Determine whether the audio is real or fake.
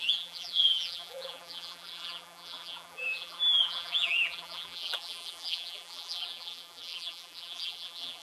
fake